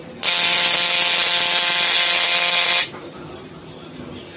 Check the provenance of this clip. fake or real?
real